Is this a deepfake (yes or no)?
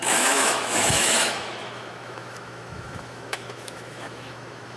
yes